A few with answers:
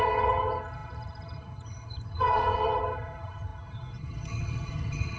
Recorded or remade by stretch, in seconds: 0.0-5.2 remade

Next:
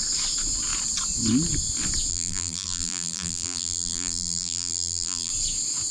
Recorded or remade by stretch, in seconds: 0.0-2.1 recorded; 2.1-5.3 remade; 5.3-5.9 recorded

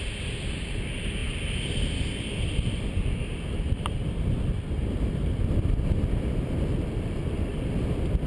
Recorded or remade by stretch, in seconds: 0.0-8.3 recorded

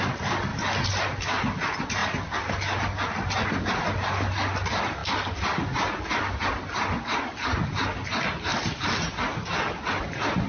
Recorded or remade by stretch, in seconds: 0.0-10.5 recorded

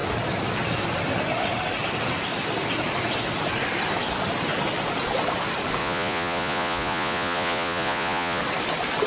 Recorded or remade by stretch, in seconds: 0.0-5.8 recorded; 5.8-8.4 remade; 8.4-9.1 recorded

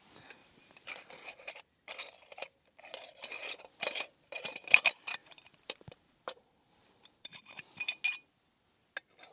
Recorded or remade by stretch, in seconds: 0.0-0.4 recorded; 0.4-1.5 remade; 1.5-5.2 recorded; 5.2-7.4 remade; 7.4-9.3 recorded

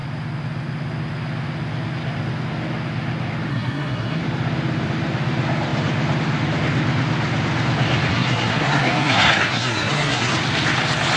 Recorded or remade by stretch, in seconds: 0.0-3.5 recorded; 3.5-4.2 remade; 4.2-8.1 recorded; 8.1-10.3 remade; 10.3-11.2 recorded